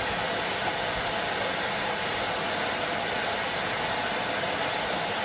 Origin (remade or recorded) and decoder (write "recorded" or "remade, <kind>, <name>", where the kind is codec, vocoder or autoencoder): recorded